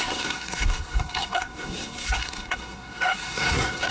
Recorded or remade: remade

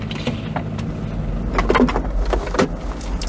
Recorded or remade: recorded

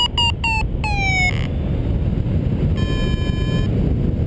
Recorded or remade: recorded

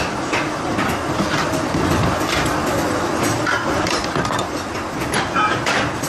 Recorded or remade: recorded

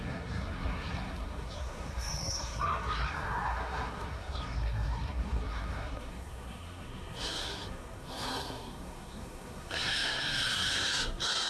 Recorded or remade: remade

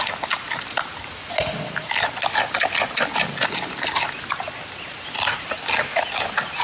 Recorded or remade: recorded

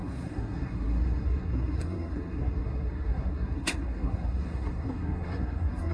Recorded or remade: remade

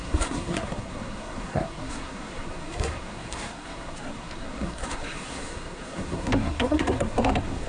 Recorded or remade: remade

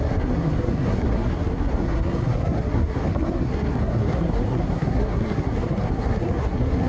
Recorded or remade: remade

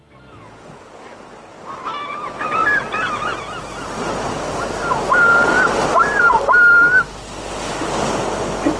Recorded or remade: recorded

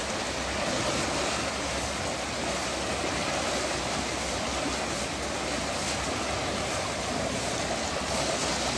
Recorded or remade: recorded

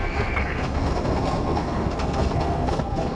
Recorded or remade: remade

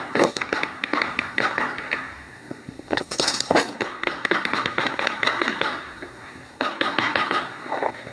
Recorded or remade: remade